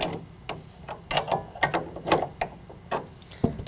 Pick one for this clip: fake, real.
real